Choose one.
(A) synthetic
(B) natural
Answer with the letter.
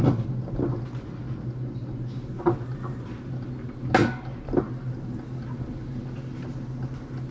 B